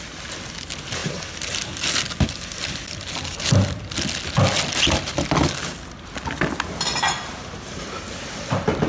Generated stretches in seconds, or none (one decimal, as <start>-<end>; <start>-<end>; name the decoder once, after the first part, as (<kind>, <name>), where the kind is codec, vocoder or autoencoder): none